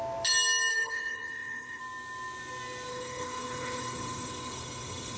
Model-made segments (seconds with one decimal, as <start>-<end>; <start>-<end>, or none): 0.7-1.8; 2.9-5.2